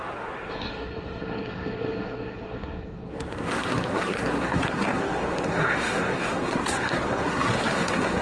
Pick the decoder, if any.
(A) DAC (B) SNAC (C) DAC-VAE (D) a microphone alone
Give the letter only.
B